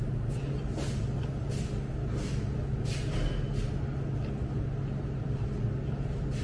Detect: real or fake real